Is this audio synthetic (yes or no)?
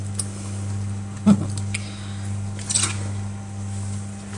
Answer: no